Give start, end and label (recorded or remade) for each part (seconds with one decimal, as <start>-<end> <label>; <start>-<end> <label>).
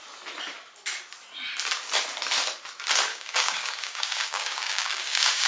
0.0-3.1 recorded; 3.1-5.5 remade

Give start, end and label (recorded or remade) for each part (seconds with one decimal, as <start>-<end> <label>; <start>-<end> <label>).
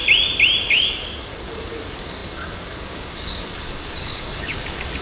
0.0-0.7 recorded; 0.7-5.0 remade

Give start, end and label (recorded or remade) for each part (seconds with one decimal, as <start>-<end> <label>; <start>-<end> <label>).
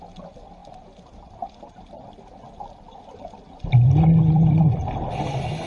0.0-5.7 recorded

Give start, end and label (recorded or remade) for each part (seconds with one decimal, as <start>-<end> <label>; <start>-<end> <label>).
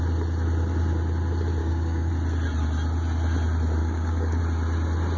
0.0-1.6 recorded; 1.6-2.1 remade; 2.1-3.8 recorded; 3.8-4.4 remade; 4.4-5.2 recorded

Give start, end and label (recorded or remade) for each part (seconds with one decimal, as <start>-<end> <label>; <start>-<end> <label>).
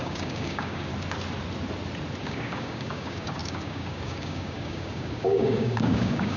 0.0-0.9 remade; 0.9-2.2 recorded; 2.2-6.4 remade